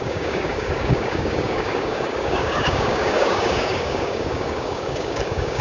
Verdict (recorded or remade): remade